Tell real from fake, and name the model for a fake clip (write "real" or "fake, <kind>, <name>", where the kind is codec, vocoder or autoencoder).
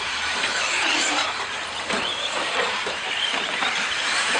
fake, vocoder, BigVGAN v2